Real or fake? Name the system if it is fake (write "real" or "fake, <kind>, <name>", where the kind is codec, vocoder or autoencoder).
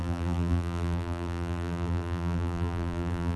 fake, vocoder, BigVGAN v2